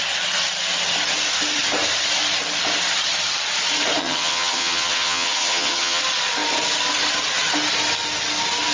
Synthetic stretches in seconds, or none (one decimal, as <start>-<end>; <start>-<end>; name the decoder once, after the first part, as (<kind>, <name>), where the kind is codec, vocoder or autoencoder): 4.0-6.0 (vocoder, HiFi-GAN)